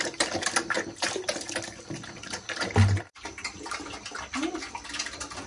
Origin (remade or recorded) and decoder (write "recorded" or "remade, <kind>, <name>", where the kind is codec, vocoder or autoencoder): recorded